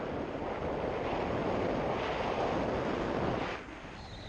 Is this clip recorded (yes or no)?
yes